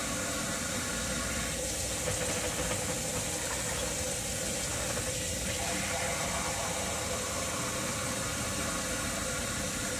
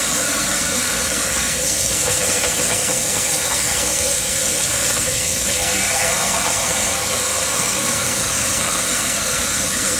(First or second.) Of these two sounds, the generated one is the second